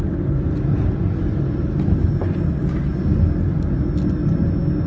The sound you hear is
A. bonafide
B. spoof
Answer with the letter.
A